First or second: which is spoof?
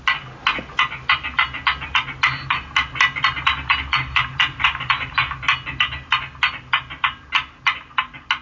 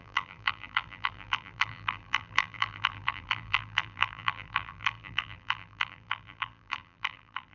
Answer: second